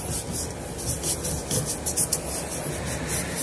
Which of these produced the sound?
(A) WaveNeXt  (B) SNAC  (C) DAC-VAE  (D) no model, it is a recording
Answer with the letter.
D